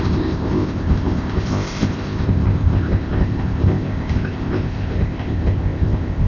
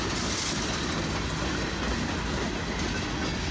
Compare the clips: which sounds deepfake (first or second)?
first